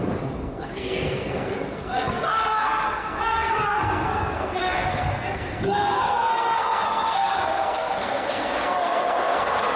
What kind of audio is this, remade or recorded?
remade